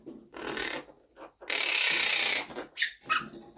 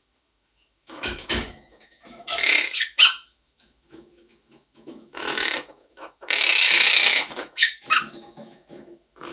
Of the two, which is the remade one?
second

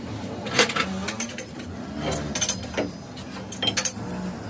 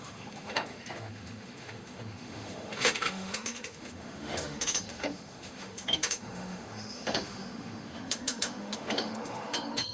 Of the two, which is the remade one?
second